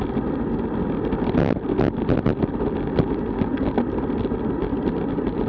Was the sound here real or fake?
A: real